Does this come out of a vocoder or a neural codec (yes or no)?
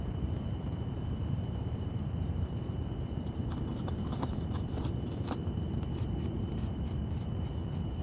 yes